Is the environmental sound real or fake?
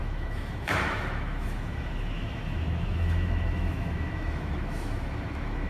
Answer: fake